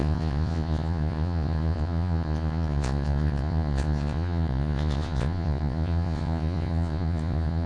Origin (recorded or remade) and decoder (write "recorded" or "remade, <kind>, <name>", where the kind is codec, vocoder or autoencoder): remade, vocoder, Vocos